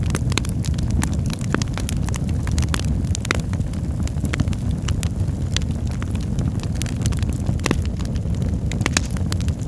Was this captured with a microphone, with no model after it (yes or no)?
yes